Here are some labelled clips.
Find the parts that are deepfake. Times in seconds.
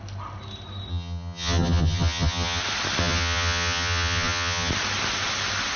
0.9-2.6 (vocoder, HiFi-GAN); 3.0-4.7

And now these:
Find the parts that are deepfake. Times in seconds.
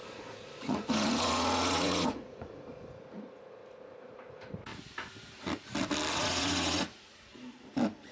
0.0-4.7 (vocoder, Vocos); 6.1-7.3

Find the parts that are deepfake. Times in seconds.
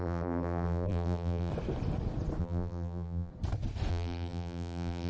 0.0-1.5 (vocoder, BigVGAN v2); 2.4-3.3; 3.9-5.1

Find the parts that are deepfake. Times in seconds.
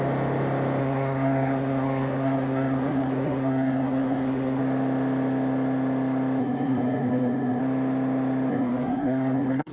0.8-4.6 (codec, SNAC); 6.4-7.6; 8.5-9.7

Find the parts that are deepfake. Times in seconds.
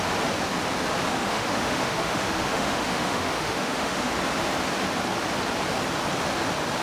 1.1-4.1 (autoencoder, DAC-VAE)